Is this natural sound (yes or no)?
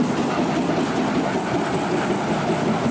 yes